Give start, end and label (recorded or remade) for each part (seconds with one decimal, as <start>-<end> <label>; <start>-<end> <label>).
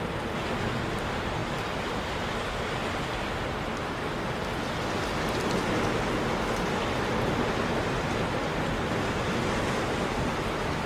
0.0-10.9 recorded